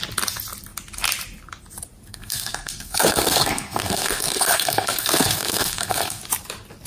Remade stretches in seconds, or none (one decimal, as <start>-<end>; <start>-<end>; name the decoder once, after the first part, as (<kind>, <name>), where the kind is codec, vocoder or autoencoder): 2.1-6.2 (codec, SNAC)